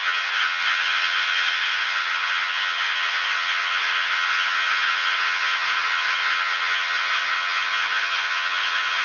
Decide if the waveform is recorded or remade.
remade